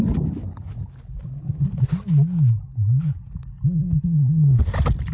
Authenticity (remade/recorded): recorded